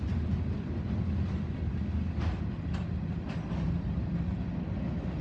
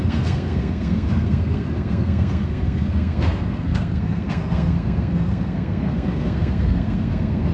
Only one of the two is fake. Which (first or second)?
second